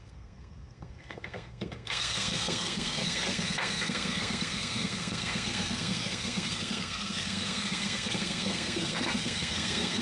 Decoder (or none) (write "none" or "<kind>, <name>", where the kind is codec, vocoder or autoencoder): codec, SNAC